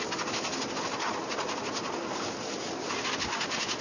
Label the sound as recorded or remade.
recorded